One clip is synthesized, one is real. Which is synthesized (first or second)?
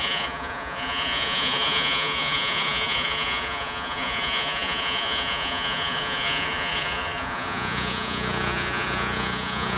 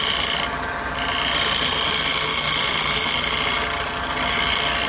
first